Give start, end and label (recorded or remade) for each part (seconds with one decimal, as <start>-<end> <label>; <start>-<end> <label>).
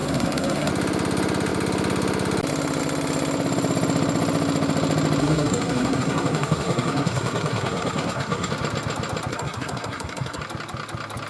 0.0-0.7 remade; 0.7-5.2 recorded; 5.2-8.5 remade; 8.5-9.3 recorded; 9.3-10.4 remade; 10.4-11.3 recorded